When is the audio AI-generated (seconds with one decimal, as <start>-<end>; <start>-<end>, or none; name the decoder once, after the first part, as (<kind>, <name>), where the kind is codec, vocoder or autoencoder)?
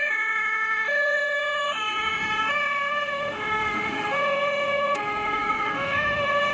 0.0-6.5 (autoencoder, DAC-VAE)